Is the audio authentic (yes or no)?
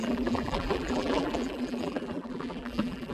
no